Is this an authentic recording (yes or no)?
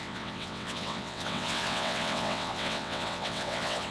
no